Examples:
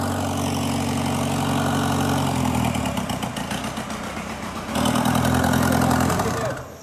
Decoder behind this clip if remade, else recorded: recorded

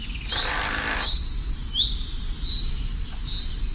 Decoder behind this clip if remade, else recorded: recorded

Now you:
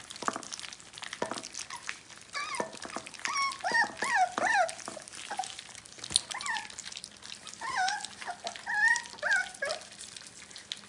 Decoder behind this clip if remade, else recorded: recorded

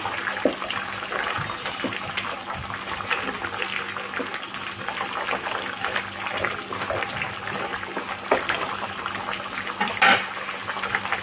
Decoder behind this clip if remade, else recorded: recorded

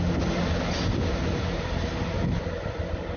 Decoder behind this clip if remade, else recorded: recorded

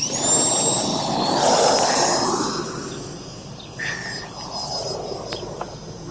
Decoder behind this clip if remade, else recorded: recorded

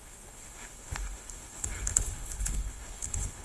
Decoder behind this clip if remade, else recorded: remade, codec, HILCodec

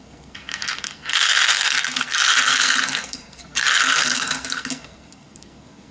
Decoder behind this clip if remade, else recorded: remade, codec, SNAC